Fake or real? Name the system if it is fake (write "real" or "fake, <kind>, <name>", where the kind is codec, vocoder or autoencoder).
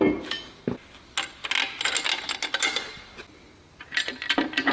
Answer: real